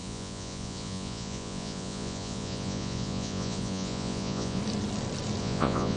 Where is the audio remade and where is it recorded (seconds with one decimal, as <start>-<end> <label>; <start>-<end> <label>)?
0.0-4.6 remade; 4.6-5.4 recorded; 5.4-6.0 remade